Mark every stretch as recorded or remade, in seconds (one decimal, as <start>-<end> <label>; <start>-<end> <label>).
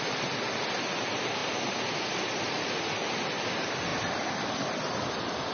0.0-1.4 recorded; 1.4-2.8 remade; 2.8-5.5 recorded